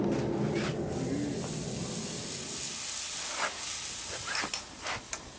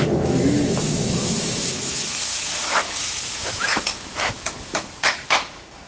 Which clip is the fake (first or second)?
second